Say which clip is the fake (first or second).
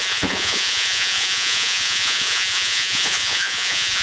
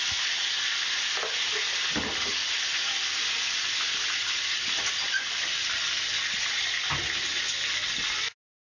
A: first